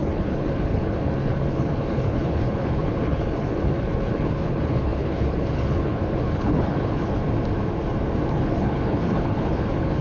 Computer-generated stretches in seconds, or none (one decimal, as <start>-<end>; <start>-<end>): 0.0-7.2; 8.3-10.0